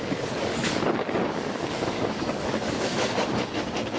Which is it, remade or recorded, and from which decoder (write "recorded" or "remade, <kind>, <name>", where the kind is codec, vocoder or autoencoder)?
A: remade, codec, DAC